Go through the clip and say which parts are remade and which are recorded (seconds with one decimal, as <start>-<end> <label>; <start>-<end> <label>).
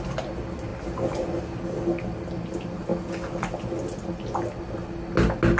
0.0-5.6 recorded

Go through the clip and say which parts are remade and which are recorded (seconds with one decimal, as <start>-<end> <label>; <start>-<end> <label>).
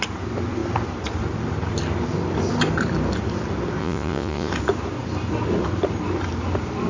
0.0-3.8 recorded; 3.8-4.5 remade; 4.5-6.9 recorded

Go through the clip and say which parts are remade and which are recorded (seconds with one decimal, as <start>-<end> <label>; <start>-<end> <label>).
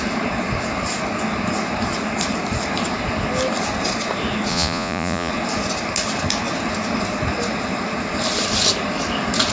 0.0-4.5 recorded; 4.5-5.3 remade; 5.3-9.5 recorded